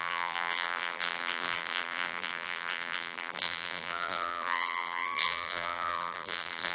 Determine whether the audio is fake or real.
fake